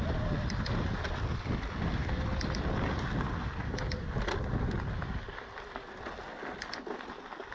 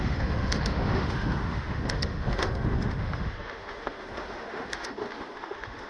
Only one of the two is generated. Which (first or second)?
second